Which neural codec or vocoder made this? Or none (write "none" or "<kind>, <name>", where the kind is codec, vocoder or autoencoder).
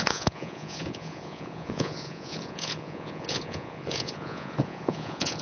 vocoder, Vocos